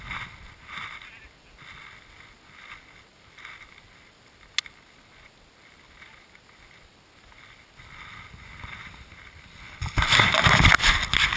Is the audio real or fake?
real